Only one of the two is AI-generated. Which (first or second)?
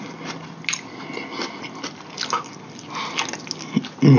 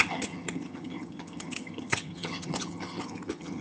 second